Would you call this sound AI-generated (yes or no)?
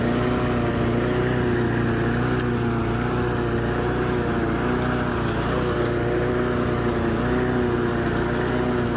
no